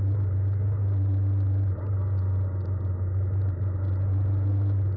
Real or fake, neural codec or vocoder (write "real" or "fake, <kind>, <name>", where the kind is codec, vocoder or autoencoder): real